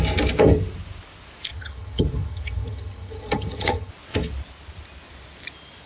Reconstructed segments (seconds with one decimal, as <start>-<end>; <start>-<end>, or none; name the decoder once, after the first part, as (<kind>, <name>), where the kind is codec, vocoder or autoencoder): 1.5-3.9 (vocoder, HiFi-GAN)